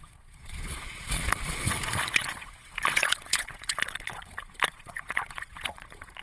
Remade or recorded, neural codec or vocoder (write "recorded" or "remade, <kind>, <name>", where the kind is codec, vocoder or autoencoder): remade, vocoder, Vocos